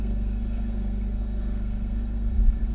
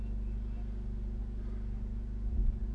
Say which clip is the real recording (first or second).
second